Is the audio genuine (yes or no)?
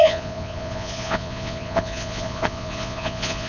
no